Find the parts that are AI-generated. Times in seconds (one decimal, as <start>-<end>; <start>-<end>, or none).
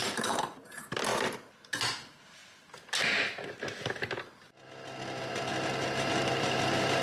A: 0.0-1.1; 2.0-2.4; 5.0-7.0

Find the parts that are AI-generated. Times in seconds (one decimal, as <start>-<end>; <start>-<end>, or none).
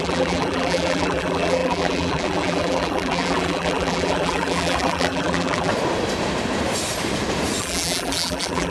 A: 0.0-5.7; 7.6-8.7